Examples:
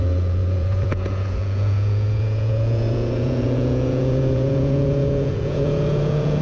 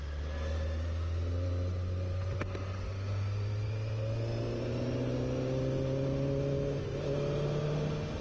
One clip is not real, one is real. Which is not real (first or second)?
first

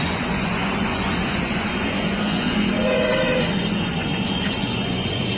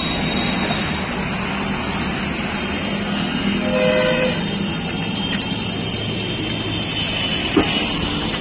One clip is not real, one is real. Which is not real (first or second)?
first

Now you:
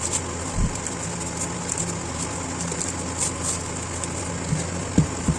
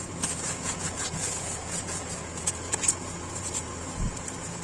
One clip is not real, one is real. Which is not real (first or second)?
second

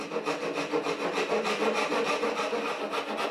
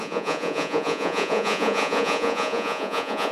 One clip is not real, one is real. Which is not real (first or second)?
second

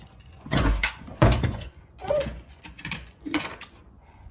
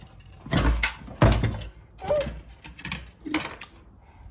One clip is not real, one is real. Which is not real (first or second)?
first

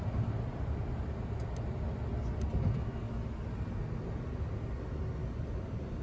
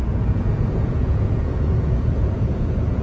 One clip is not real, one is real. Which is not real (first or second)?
second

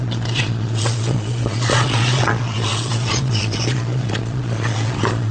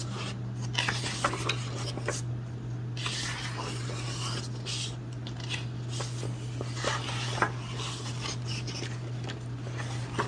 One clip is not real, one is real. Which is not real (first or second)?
first